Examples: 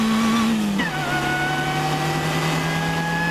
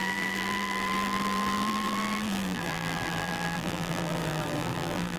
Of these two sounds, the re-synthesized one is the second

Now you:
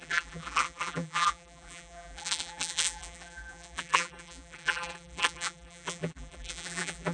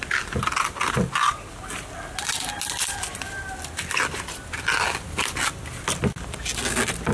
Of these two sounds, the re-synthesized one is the first